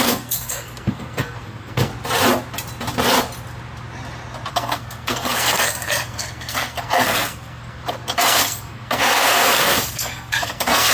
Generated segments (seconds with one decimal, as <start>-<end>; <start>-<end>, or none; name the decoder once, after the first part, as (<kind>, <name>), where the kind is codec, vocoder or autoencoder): 0.0-1.9 (codec, SNAC); 4.5-10.9